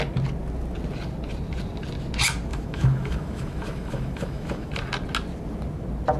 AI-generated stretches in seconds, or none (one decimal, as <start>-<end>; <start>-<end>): 2.5-4.7